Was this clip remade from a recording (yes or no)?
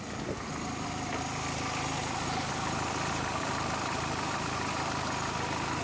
no